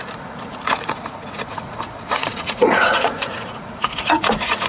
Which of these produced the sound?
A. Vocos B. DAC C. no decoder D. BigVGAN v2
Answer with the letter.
A